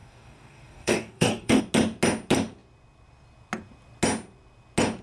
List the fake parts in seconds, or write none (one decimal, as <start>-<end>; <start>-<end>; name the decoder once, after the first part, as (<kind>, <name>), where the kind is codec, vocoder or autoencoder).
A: 0.0-1.6 (codec, DAC)